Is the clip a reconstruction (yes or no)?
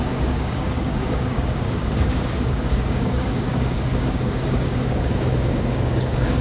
yes